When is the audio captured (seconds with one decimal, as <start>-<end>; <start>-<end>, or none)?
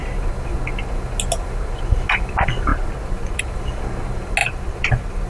0.0-2.7; 3.4-4.4